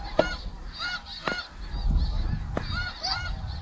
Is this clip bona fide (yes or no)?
yes